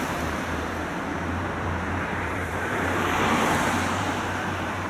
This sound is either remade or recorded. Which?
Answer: remade